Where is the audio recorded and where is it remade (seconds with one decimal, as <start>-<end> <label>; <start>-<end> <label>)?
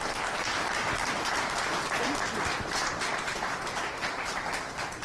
0.0-1.0 recorded; 1.0-2.0 remade; 2.0-3.1 recorded; 3.1-5.0 remade